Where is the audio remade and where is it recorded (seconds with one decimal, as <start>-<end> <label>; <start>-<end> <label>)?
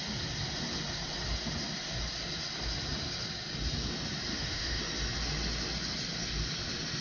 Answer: 0.0-4.3 recorded; 4.3-4.8 remade; 4.8-7.0 recorded